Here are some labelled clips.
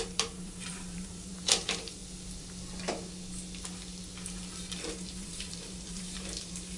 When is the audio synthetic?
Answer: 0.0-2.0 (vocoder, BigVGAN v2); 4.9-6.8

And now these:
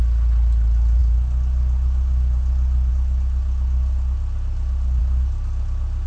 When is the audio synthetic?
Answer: none

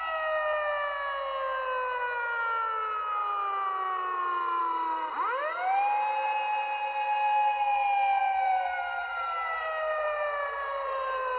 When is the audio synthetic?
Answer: 8.2-11.4 (vocoder, BigVGAN v2)

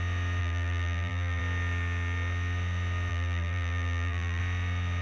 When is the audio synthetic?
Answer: 0.4-1.4 (vocoder, BigVGAN v2); 3.1-4.4

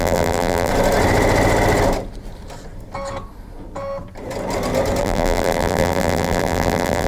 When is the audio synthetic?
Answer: 0.0-0.7 (vocoder, BigVGAN v2); 5.0-7.1

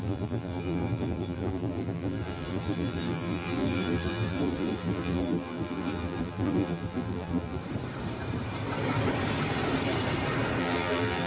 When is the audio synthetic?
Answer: 0.0-7.6 (vocoder, BigVGAN v2); 10.6-11.3